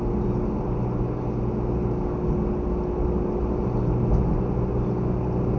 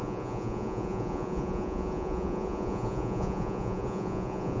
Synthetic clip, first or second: second